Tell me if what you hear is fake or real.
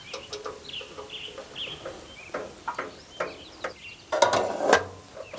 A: real